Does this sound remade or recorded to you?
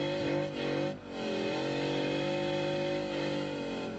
recorded